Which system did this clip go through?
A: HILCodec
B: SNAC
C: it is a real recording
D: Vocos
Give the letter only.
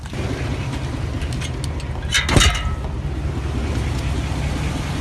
C